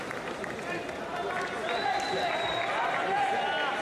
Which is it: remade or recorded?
recorded